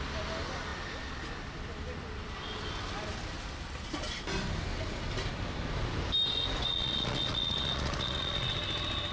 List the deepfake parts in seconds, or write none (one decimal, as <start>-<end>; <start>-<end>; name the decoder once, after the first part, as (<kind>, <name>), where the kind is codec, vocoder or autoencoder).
6.7-8.5 (vocoder, Vocos)